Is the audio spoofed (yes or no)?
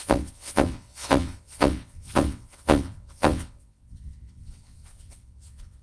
yes